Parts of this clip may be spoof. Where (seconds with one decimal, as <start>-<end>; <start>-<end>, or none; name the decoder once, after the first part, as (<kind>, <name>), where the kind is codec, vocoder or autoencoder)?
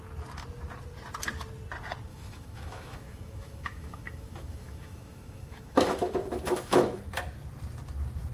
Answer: 2.1-7.0 (autoencoder, DAC-VAE)